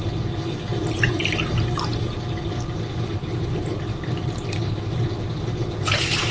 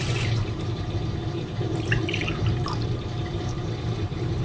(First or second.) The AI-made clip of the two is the second